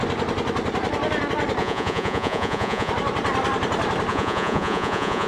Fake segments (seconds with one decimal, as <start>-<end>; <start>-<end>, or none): 1.6-2.9; 4.1-5.3